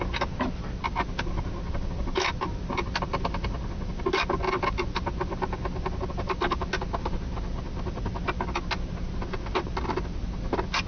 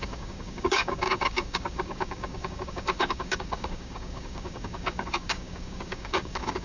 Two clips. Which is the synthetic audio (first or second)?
second